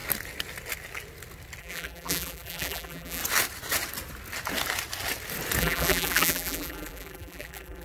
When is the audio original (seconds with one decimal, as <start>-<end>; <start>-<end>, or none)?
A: 0.0-1.6; 3.2-5.6